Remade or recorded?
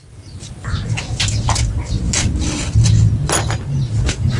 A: recorded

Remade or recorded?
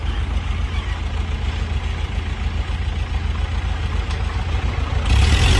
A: recorded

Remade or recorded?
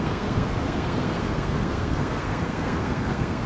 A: remade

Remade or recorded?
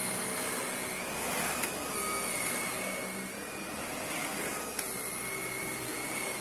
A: recorded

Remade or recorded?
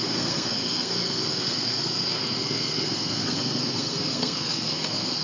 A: remade